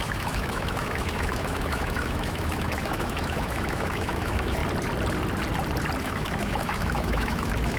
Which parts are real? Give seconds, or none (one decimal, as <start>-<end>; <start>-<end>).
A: 4.6-6.0